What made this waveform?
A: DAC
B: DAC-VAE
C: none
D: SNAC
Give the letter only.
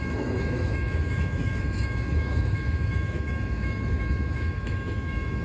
B